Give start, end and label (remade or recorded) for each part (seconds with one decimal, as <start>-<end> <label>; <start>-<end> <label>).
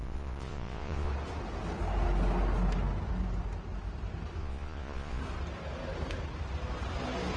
0.0-1.1 remade; 1.1-4.4 recorded; 4.4-5.2 remade; 5.2-7.4 recorded